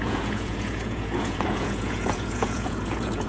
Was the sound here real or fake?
fake